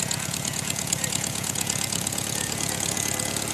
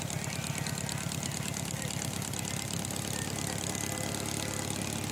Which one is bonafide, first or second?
second